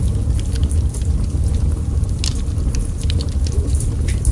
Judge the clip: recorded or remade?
recorded